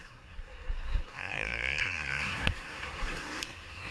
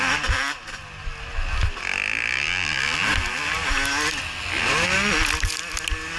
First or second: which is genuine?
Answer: second